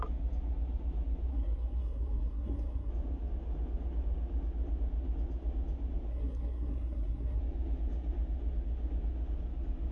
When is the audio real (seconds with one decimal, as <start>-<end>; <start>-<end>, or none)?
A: 0.0-1.3; 2.9-6.1; 7.4-9.9